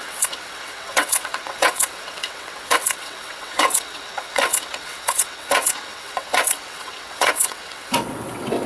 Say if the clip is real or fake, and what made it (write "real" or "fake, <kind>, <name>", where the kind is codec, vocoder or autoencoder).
fake, vocoder, WaveNeXt